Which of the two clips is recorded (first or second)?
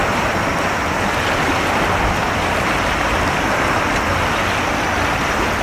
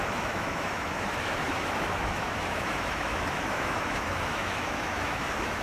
first